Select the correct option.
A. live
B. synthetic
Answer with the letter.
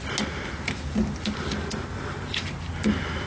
A